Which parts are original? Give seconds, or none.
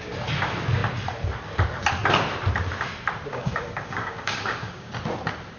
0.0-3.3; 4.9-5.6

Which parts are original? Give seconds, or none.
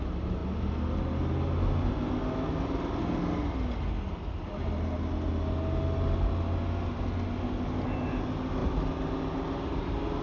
0.0-10.2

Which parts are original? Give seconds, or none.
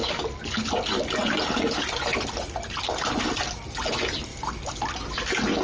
0.0-5.6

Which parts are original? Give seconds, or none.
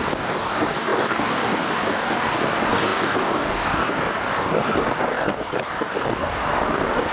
none